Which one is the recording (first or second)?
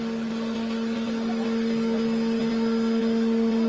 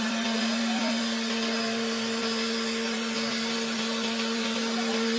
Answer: first